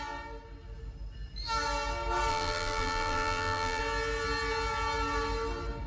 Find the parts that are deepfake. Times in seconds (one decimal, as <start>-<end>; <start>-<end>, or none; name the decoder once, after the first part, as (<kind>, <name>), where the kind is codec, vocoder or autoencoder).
2.3-3.8 (vocoder, BigVGAN v2)